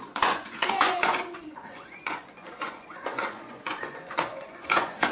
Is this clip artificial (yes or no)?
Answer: yes